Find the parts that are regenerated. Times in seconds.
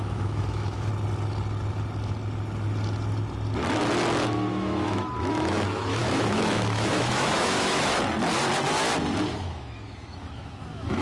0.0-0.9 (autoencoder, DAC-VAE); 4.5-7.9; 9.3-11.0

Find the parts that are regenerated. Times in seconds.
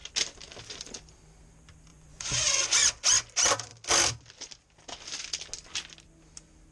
1.9-2.5 (vocoder, Vocos)